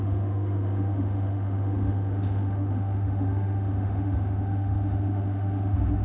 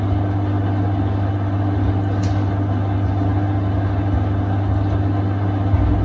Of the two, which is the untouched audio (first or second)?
second